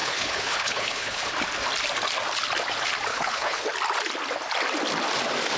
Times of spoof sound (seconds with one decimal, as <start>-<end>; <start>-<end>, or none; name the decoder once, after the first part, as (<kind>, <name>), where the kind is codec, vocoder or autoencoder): 0.0-1.3 (codec, HILCodec); 3.1-3.6